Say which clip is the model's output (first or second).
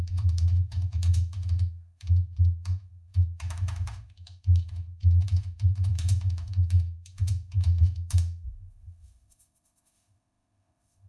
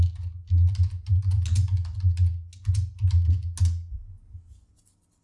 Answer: first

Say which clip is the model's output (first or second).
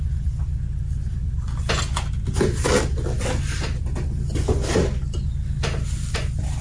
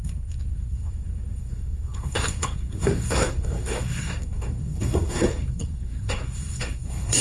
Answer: second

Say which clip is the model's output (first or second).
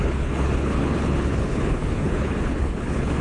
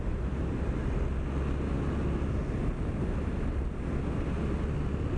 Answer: first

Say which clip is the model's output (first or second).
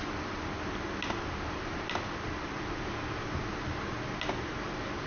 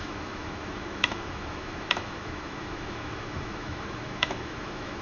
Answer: second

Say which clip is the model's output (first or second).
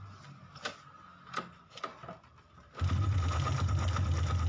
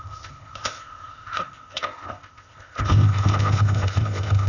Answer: second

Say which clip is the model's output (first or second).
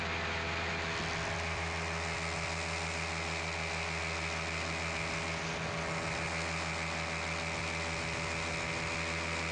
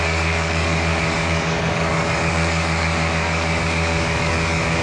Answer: second